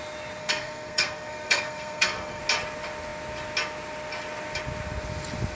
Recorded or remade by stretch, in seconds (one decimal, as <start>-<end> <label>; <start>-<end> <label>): 0.0-0.4 recorded; 0.4-2.4 remade; 2.4-5.5 recorded